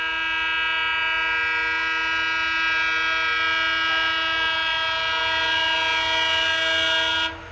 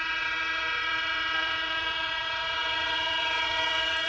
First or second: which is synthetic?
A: second